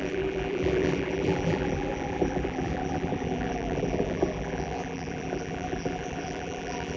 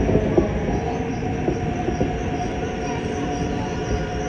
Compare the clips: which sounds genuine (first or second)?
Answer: second